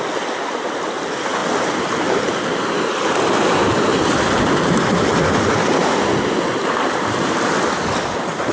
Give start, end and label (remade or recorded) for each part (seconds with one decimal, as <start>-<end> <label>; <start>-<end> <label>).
0.0-8.5 recorded